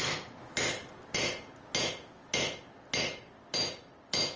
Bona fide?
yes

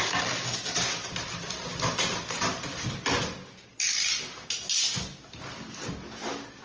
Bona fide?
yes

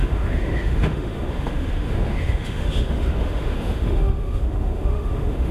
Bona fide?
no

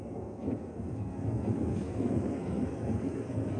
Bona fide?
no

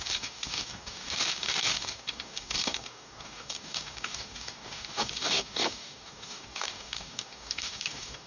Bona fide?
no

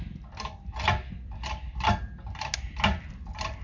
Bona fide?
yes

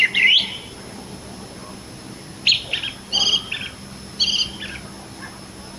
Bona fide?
yes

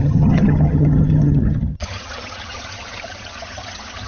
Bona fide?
no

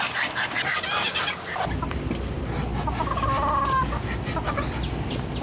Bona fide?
yes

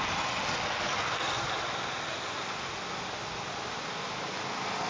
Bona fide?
yes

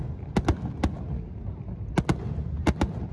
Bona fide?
yes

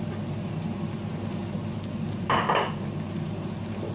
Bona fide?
yes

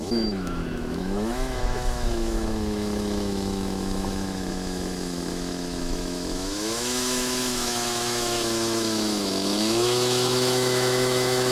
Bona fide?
no